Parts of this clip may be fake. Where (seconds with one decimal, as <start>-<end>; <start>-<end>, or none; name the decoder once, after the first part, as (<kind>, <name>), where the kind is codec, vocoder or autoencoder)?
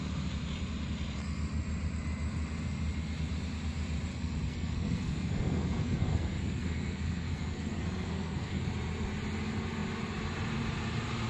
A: 4.1-8.7 (codec, SNAC)